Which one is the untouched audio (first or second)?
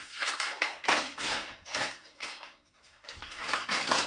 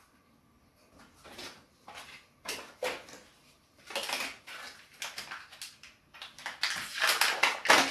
second